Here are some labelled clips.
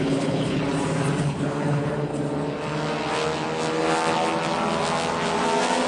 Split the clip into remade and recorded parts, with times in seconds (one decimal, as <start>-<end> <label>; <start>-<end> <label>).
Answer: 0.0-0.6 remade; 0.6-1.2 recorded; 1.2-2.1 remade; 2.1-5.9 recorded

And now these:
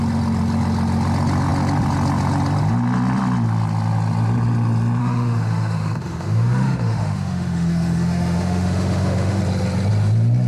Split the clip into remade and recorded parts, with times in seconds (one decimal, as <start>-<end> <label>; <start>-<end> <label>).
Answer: 0.0-5.0 recorded; 5.0-9.4 remade; 9.4-10.5 recorded

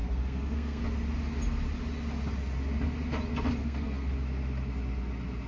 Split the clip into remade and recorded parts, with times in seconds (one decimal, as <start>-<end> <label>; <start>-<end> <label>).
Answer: 0.0-0.8 remade; 0.8-3.6 recorded; 3.6-4.1 remade; 4.1-5.5 recorded